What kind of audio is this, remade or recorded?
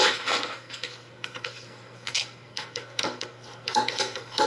remade